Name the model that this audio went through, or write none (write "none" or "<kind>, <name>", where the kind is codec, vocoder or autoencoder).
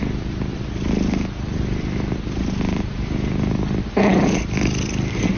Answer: none